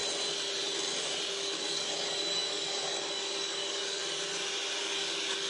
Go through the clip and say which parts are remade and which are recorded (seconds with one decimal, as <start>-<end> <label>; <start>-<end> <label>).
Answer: 0.0-1.3 recorded; 1.3-4.0 remade; 4.0-4.8 recorded; 4.8-5.5 remade